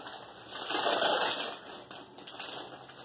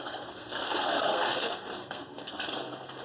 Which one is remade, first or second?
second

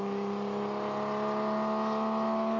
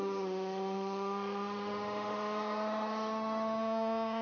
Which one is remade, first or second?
second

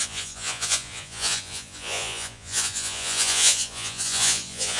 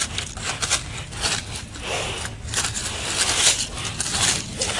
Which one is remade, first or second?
first